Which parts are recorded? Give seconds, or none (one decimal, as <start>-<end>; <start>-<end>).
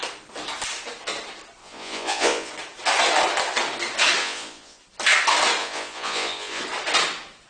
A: 0.0-1.6; 2.5-4.2; 4.8-5.6; 6.6-7.5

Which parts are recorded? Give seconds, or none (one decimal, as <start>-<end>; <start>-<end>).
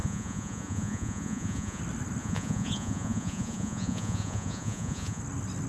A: 1.8-2.2; 5.2-5.7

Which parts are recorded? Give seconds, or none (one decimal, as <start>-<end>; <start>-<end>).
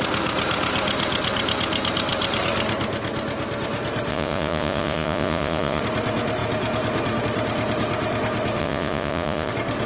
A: 0.0-4.1; 5.8-8.6; 9.5-9.9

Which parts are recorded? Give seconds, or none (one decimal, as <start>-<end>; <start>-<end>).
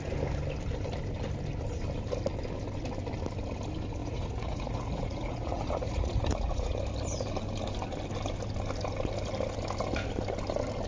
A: 0.0-4.0; 6.8-10.9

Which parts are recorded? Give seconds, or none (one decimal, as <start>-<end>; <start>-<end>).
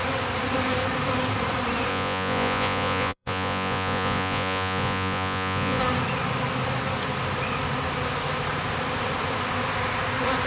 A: 0.0-1.9; 5.8-10.5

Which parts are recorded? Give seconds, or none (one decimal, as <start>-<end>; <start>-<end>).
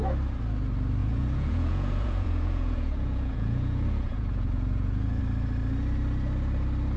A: 0.0-1.0; 5.2-7.0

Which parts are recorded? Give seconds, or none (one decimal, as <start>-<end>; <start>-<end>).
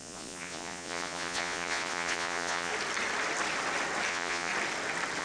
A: 2.7-4.1; 4.5-5.2